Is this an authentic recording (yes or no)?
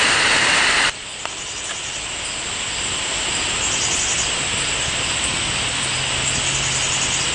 yes